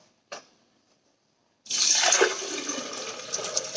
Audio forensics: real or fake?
real